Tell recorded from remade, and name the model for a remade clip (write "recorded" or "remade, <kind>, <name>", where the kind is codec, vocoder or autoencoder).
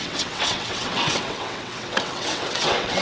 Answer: remade, vocoder, WaveNeXt